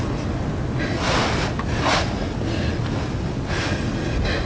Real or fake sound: real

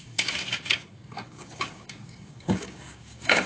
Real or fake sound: fake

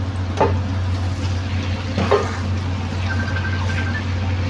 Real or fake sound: real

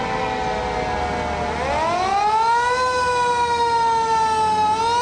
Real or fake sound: real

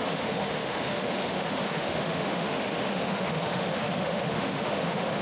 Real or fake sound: fake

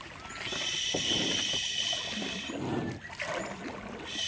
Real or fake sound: real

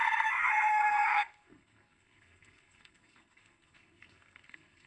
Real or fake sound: fake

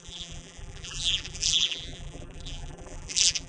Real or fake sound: fake